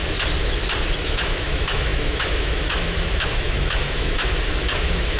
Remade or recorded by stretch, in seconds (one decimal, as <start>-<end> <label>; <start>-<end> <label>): 0.0-1.0 recorded; 1.0-5.2 remade